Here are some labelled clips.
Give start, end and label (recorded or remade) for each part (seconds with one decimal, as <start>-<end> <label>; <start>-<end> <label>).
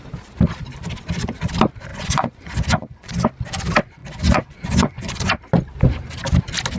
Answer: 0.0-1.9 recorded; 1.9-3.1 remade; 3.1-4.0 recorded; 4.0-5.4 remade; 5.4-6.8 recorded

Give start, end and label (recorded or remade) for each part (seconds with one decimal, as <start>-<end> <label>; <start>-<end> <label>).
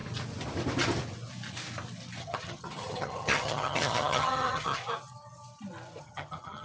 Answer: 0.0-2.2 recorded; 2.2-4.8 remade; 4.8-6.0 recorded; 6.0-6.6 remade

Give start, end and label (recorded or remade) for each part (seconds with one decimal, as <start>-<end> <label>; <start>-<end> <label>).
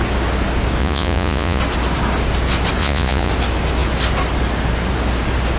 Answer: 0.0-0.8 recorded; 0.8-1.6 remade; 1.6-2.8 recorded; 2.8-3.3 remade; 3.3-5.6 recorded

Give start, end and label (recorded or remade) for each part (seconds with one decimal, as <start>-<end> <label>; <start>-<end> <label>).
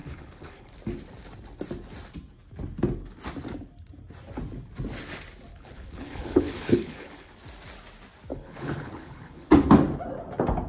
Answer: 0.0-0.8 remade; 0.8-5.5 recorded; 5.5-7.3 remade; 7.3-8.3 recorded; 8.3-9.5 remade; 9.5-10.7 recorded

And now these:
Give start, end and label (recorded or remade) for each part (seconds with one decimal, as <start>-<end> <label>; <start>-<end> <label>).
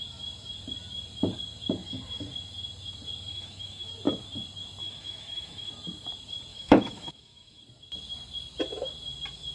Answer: 0.0-3.3 recorded; 3.3-3.9 remade; 3.9-4.8 recorded; 4.8-5.7 remade; 5.7-6.5 recorded; 6.5-7.6 remade; 7.6-9.5 recorded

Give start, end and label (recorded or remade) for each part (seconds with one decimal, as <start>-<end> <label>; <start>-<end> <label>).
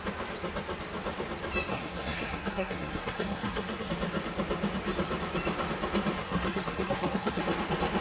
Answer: 0.0-1.7 recorded; 1.7-3.9 remade; 3.9-6.2 recorded; 6.2-7.4 remade; 7.4-8.0 recorded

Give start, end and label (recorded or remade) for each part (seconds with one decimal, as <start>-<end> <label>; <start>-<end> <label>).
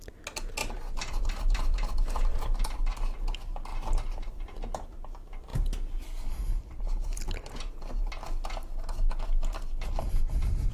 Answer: 0.0-0.6 recorded; 0.6-2.8 remade; 2.8-3.7 recorded; 3.7-4.3 remade; 4.3-10.7 recorded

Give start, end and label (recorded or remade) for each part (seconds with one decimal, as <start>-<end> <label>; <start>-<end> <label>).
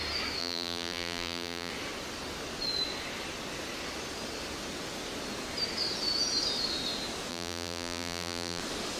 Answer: 0.0-0.4 recorded; 0.4-1.7 remade; 1.7-7.3 recorded; 7.3-8.6 remade; 8.6-9.0 recorded